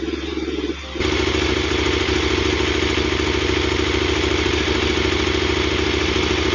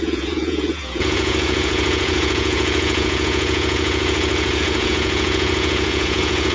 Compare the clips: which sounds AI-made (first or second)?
second